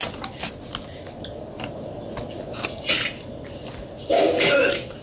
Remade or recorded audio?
recorded